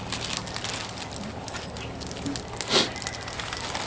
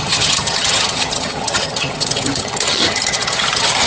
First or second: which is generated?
second